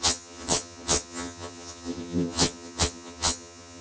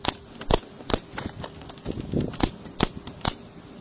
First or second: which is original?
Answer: second